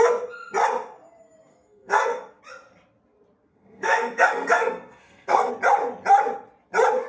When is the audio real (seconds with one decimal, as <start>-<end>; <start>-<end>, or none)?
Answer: 0.0-1.5; 2.4-3.5; 5.5-7.1